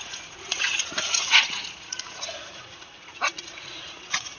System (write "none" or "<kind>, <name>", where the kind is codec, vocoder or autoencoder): vocoder, Vocos